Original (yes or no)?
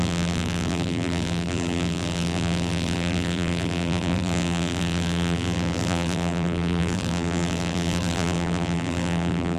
no